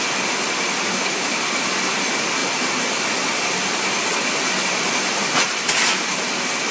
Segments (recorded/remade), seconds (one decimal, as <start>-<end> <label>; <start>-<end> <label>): 0.0-0.9 recorded; 0.9-1.4 remade; 1.4-6.7 recorded